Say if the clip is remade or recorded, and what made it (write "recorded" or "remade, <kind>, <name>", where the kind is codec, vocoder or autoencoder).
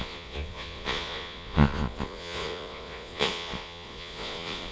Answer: remade, vocoder, Vocos